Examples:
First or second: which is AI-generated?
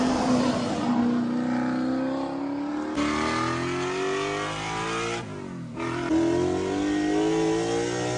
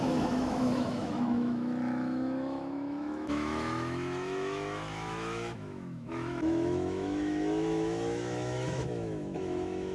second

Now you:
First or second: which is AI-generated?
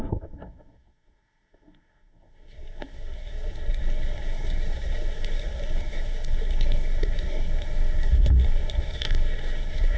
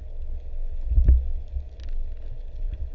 first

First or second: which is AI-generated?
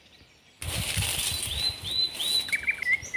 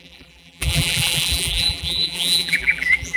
second